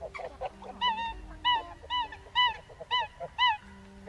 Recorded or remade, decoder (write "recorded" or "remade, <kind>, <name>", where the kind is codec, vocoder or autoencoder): recorded